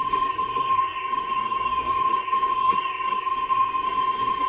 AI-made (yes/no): yes